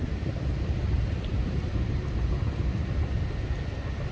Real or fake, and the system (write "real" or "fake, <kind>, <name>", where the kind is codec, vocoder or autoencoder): real